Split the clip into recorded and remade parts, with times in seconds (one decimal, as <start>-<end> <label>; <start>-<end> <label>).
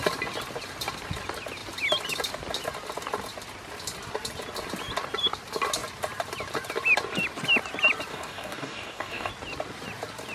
0.0-8.1 recorded; 8.1-9.3 remade; 9.3-10.3 recorded